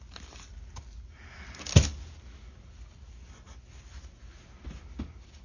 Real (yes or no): yes